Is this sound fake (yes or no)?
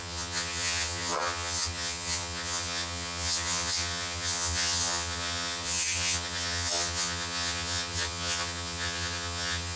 yes